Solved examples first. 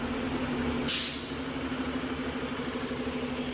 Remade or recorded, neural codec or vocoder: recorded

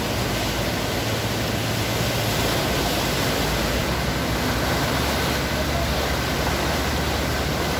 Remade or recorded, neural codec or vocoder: recorded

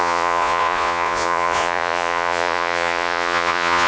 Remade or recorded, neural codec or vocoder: remade, vocoder, Vocos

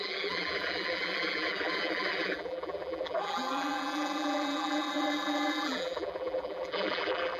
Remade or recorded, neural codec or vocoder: remade, vocoder, BigVGAN v2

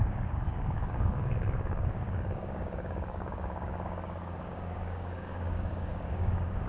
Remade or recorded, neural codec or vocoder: remade, codec, DAC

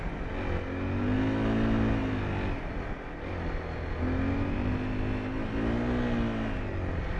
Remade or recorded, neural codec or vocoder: recorded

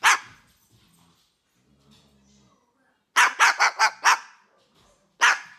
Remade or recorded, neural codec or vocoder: recorded